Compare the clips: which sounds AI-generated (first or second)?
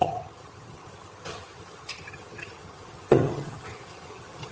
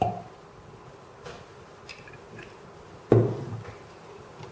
first